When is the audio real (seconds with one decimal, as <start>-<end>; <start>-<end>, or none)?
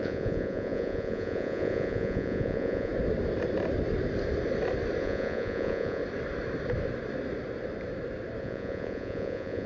2.9-5.0; 6.0-8.4